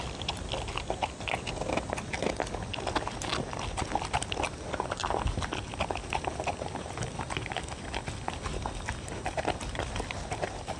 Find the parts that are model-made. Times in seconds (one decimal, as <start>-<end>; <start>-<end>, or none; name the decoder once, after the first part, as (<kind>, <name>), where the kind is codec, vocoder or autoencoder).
none